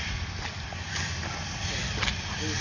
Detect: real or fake real